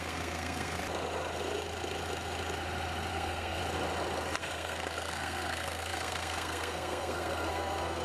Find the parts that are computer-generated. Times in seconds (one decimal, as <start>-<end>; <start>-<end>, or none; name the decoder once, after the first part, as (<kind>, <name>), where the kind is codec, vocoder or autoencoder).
0.0-0.8 (codec, SNAC); 3.1-3.6; 4.4-8.0